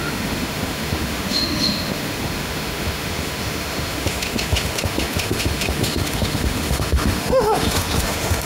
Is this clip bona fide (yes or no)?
no